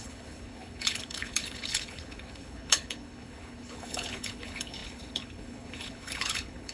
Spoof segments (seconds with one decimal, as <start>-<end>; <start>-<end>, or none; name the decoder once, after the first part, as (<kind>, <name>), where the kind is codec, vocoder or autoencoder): 0.0-6.7 (codec, HILCodec)